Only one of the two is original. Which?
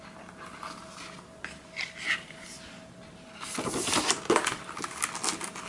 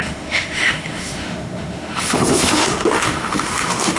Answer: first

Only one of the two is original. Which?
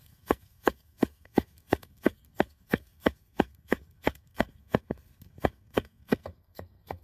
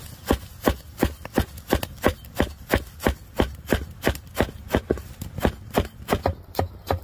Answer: second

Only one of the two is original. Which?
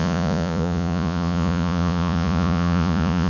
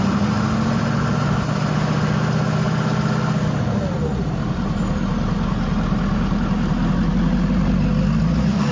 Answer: second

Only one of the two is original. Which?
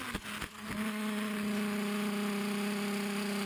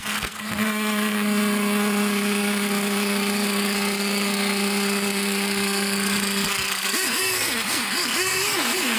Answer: first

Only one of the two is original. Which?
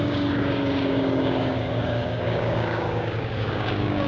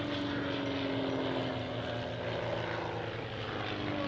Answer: second